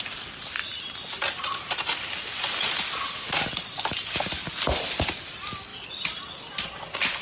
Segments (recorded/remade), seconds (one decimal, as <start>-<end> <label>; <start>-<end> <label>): 0.0-7.2 recorded

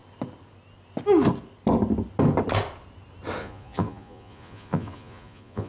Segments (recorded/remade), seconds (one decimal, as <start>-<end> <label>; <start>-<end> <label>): 0.0-3.4 recorded; 3.4-5.7 remade

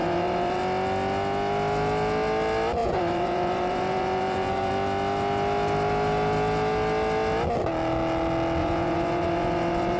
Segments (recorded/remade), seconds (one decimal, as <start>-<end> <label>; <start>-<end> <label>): 0.0-0.6 remade; 0.6-2.8 recorded; 2.8-4.7 remade; 4.7-8.6 recorded; 8.6-10.0 remade